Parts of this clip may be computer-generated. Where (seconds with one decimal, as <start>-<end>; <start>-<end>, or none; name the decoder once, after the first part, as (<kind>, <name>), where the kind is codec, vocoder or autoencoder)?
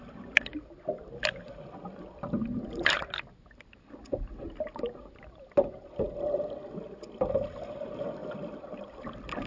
8.2-9.5 (vocoder, BigVGAN v2)